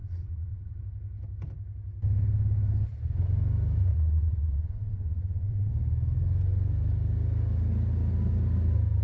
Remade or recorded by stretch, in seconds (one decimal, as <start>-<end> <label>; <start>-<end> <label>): 0.0-0.8 remade; 0.8-3.9 recorded; 3.9-5.7 remade; 5.7-9.0 recorded